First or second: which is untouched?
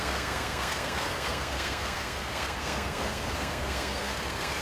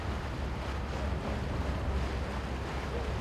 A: second